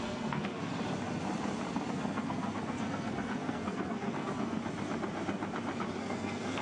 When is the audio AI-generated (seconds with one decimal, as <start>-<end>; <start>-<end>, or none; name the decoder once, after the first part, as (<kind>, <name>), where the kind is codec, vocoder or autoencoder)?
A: 0.0-0.7 (codec, SNAC); 1.9-4.6; 6.0-6.6